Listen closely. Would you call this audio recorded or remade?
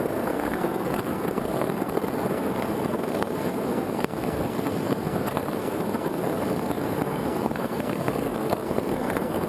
remade